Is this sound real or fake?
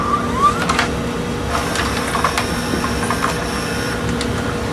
real